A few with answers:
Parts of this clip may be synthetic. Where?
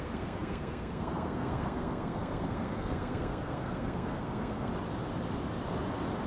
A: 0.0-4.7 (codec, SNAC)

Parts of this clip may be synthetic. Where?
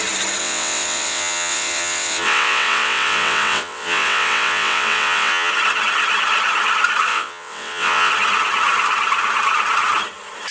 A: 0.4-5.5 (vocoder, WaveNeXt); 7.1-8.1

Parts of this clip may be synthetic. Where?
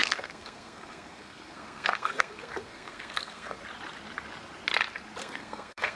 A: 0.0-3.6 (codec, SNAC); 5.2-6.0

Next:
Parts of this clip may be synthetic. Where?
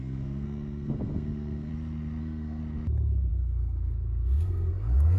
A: 0.0-1.7 (codec, SNAC); 2.2-2.6; 3.3-5.2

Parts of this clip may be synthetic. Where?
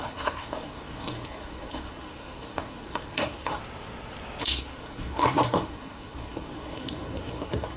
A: 0.0-3.6 (codec, SNAC); 4.4-7.8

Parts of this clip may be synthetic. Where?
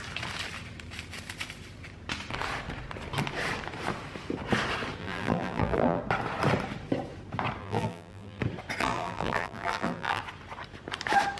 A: 5.0-6.0 (vocoder, BigVGAN v2); 7.6-8.4; 8.8-10.2